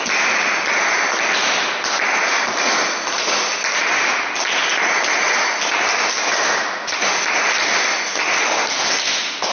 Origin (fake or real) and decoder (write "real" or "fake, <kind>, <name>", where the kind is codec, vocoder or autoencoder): real